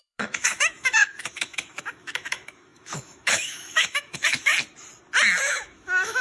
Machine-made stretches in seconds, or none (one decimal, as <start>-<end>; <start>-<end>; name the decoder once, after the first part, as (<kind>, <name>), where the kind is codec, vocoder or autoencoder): 0.0-4.5 (autoencoder, DAC-VAE); 5.4-6.2